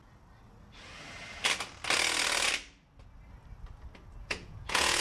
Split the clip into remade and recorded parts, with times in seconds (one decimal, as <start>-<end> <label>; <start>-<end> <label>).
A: 0.0-4.2 recorded; 4.2-5.0 remade